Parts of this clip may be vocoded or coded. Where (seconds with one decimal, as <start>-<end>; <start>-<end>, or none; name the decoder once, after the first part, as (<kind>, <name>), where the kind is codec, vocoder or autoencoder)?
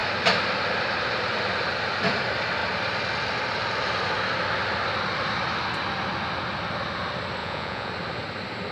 7.4-7.9 (vocoder, Vocos)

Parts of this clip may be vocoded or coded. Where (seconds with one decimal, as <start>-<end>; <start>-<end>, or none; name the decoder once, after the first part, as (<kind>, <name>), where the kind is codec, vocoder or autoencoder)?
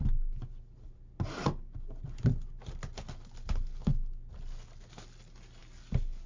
none